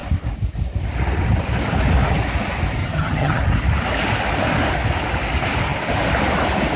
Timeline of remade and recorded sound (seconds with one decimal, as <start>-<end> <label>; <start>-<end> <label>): 0.0-2.8 recorded; 2.8-3.4 remade; 3.4-6.8 recorded